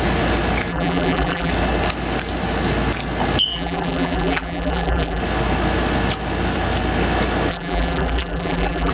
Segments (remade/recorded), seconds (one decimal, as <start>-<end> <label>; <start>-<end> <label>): 0.0-0.7 recorded; 0.7-1.5 remade; 1.5-3.5 recorded; 3.5-5.2 remade; 5.2-7.5 recorded; 7.5-8.9 remade